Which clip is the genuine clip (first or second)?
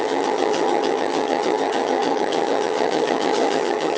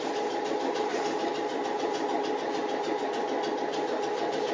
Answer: second